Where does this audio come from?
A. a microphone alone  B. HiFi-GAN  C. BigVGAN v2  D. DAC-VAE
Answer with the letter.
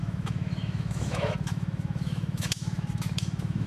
D